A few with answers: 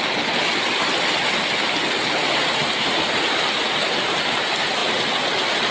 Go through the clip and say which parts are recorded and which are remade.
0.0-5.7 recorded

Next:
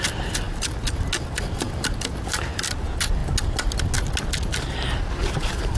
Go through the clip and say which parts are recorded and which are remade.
0.0-5.8 recorded

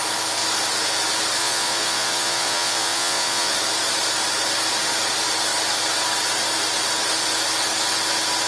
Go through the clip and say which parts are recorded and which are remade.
0.0-1.4 recorded; 1.4-3.5 remade; 3.5-8.5 recorded

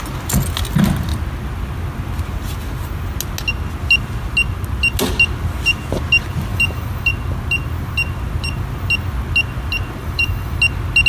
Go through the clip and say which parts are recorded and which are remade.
0.0-6.5 recorded; 6.5-7.1 remade; 7.1-10.0 recorded; 10.0-10.6 remade; 10.6-11.1 recorded

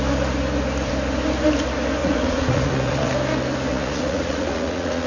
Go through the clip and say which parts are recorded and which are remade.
0.0-2.0 recorded; 2.0-3.1 remade; 3.1-3.7 recorded; 3.7-5.1 remade